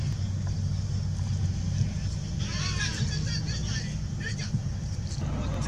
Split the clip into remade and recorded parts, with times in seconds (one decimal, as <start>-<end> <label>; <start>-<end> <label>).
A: 0.0-5.7 recorded